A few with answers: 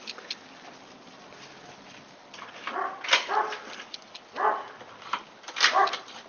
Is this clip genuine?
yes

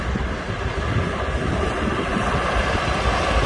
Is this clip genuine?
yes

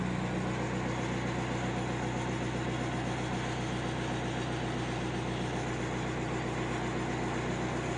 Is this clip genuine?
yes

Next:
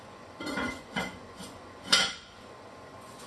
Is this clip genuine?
no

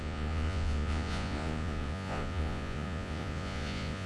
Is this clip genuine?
no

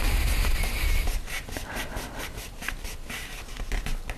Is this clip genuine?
yes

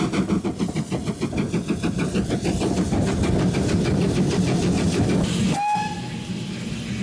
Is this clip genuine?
yes